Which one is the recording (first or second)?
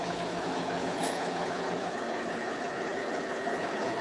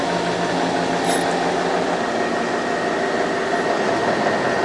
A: second